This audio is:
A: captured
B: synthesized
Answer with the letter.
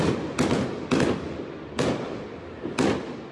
A